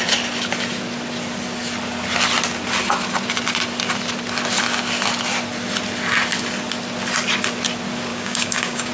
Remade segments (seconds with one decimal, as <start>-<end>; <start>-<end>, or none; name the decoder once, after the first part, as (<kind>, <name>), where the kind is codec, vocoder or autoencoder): 8.1-8.9 (codec, DAC)